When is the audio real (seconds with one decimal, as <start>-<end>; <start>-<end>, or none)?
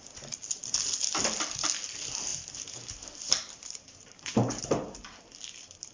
0.0-2.3; 4.6-5.9